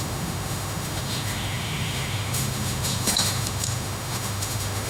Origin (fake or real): fake